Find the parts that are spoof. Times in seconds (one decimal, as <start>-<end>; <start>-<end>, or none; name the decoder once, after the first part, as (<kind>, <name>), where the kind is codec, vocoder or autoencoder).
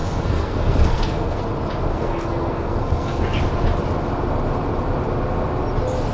0.0-1.4 (codec, SNAC); 1.9-3.4